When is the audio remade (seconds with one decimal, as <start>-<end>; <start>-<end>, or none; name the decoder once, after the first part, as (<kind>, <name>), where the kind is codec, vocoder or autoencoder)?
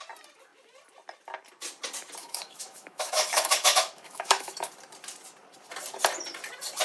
2.2-4.7 (autoencoder, DAC-VAE)